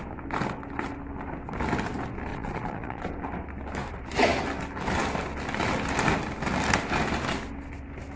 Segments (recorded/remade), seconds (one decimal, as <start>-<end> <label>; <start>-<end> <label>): 0.0-2.3 recorded; 2.3-3.0 remade; 3.0-8.2 recorded